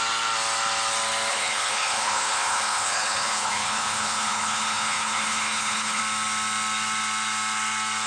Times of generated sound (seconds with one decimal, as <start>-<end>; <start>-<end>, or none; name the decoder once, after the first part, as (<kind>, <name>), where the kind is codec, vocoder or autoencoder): 1.3-6.0 (codec, HILCodec)